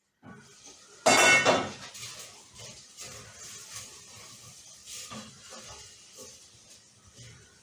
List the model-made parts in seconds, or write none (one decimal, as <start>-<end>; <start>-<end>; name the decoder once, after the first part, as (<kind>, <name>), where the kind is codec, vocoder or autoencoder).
0.0-1.0 (vocoder, BigVGAN v2); 2.6-7.6